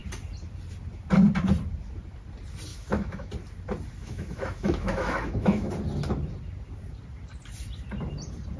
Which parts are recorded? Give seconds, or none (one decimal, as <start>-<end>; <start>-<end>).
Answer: 0.0-2.7; 3.3-4.0; 5.7-8.6